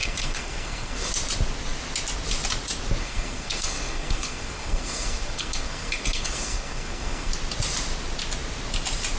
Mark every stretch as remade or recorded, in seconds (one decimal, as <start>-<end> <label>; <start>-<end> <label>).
0.0-1.1 remade; 1.1-3.0 recorded; 3.0-7.3 remade; 7.3-9.2 recorded